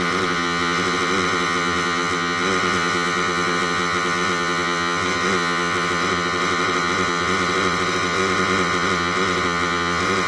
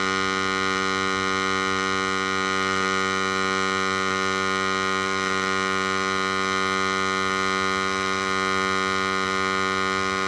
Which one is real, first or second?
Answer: second